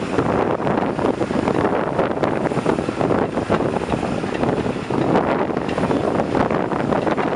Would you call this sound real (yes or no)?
yes